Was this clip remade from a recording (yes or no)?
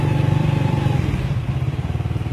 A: yes